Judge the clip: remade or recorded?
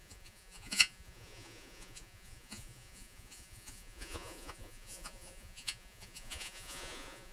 remade